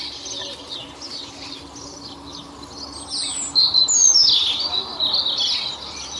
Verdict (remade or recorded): recorded